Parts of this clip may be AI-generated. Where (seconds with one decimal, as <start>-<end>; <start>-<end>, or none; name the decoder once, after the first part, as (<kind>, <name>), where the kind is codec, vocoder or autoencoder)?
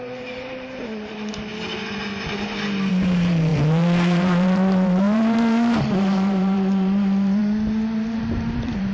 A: 0.0-1.5 (vocoder, BigVGAN v2); 2.9-7.4; 8.2-8.9